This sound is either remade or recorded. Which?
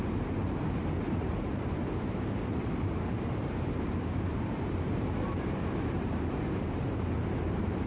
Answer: remade